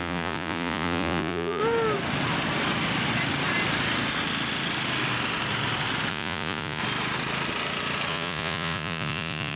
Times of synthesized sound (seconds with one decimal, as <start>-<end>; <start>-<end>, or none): 0.0-1.6; 6.1-6.8; 8.1-9.6